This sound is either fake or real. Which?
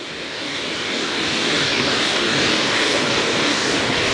fake